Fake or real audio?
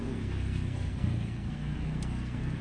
fake